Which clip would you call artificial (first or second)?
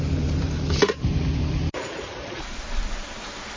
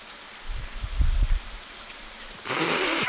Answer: first